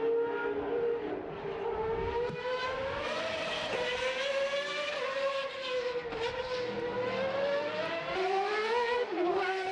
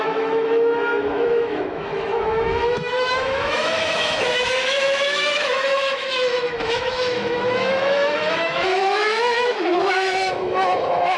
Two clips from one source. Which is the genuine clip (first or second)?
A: first